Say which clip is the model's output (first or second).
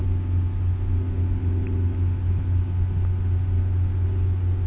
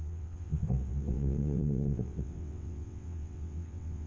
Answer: second